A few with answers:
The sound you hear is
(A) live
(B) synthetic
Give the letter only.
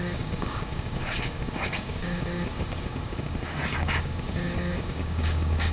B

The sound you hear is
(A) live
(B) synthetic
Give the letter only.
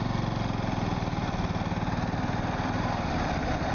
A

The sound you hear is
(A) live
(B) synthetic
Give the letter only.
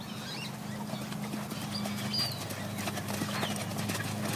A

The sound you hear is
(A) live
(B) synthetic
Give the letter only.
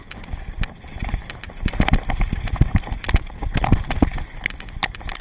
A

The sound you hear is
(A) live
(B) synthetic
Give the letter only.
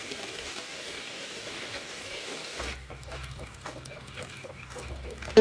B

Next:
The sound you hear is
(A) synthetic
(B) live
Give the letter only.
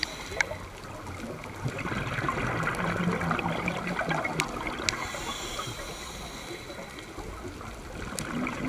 B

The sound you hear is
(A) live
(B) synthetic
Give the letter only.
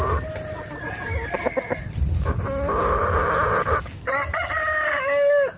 A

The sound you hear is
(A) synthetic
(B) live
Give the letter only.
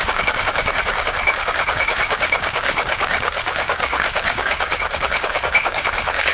A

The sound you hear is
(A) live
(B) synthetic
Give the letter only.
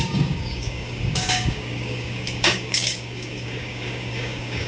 B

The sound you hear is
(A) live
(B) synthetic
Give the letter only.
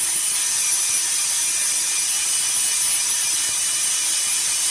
A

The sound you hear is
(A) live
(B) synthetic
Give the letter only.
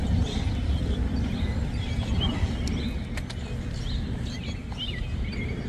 A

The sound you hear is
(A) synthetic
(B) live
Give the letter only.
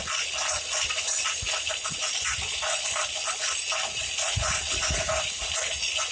B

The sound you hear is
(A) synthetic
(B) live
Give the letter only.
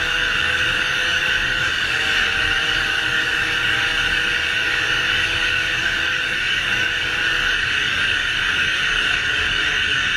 A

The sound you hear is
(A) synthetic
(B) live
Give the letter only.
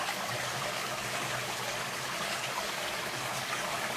A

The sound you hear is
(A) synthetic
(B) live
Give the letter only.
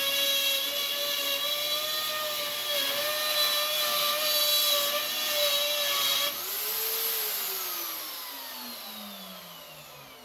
B